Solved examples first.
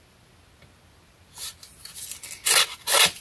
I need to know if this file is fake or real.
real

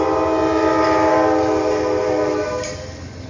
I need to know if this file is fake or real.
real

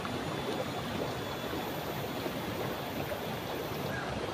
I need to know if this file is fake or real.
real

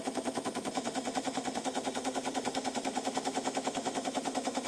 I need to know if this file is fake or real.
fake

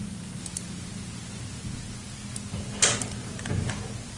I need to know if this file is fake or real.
real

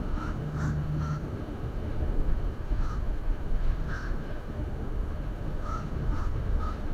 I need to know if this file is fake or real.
fake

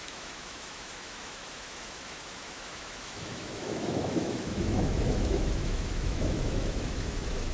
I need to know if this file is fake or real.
fake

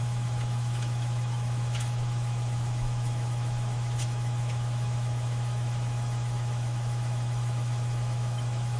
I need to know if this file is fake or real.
fake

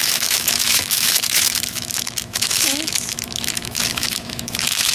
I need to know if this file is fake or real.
fake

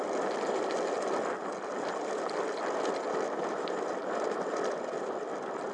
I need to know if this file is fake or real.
real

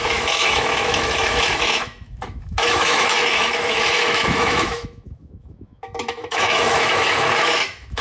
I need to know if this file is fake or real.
fake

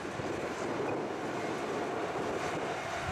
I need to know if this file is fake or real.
real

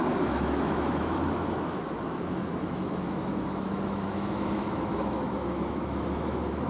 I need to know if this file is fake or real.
fake